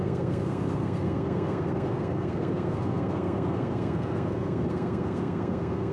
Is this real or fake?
fake